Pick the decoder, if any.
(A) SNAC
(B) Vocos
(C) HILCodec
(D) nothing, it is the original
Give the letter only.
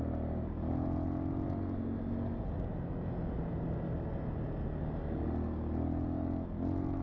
D